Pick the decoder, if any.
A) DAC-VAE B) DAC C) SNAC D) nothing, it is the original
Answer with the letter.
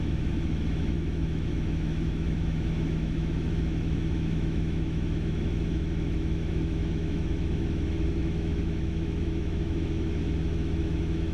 A